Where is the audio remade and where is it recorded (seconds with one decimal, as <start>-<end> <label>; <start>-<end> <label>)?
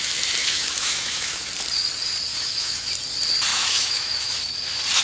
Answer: 0.0-0.4 recorded; 0.4-1.5 remade; 1.5-2.3 recorded; 2.3-2.9 remade; 2.9-3.5 recorded; 3.5-4.4 remade; 4.4-5.0 recorded